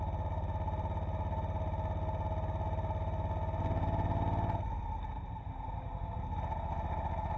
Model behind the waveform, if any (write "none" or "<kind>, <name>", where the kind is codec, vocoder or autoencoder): none